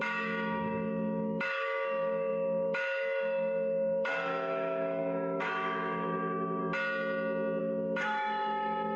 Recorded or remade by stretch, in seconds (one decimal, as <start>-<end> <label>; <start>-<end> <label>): 0.0-6.6 remade; 6.6-7.6 recorded; 7.6-9.0 remade